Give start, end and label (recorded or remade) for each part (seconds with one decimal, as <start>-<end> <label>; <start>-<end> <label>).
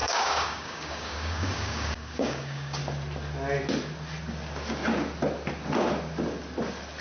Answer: 0.0-2.8 remade; 2.8-7.0 recorded